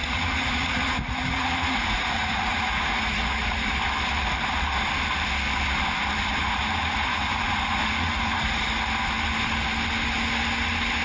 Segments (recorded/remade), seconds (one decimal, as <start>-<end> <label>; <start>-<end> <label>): 0.0-3.7 remade; 3.7-6.4 recorded; 6.4-8.4 remade; 8.4-11.0 recorded